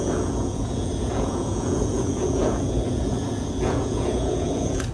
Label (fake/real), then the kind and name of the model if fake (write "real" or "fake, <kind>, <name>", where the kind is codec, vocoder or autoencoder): fake, vocoder, Vocos